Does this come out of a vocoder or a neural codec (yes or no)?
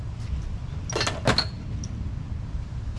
no